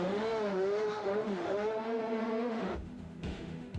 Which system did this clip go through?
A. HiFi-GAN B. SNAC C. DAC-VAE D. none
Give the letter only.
C